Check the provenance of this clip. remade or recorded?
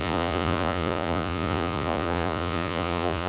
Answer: remade